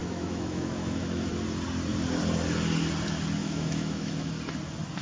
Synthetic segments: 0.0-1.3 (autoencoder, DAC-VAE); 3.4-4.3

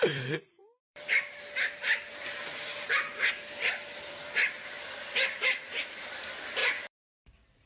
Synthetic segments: 0.0-7.7 (vocoder, BigVGAN v2)

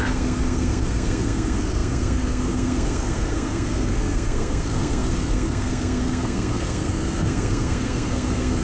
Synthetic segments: 0.0-8.6 (codec, SNAC)

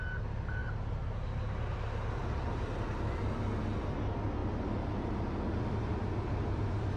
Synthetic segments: none

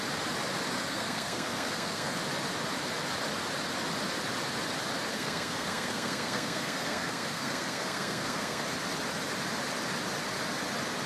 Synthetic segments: 0.8-2.2 (codec, SNAC); 5.1-8.6